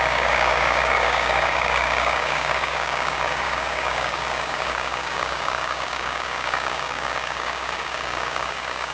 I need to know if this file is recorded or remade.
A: remade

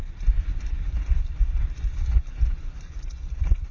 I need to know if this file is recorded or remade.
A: recorded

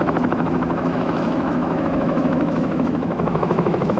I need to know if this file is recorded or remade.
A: remade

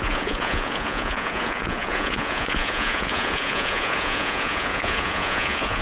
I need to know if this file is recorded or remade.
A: remade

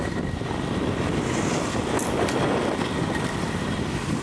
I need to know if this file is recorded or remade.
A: recorded